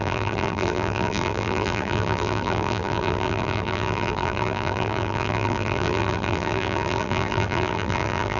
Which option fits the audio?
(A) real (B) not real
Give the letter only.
B